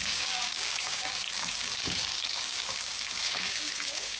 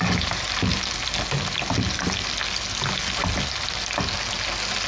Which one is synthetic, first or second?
first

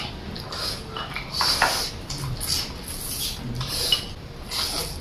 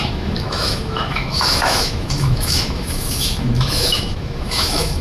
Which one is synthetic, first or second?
second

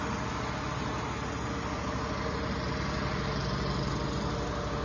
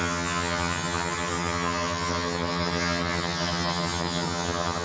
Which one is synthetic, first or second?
second